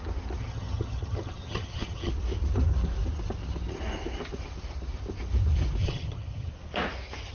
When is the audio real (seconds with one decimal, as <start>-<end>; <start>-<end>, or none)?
0.0-0.4; 2.1-5.8; 6.5-7.3